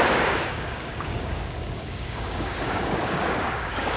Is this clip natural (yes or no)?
no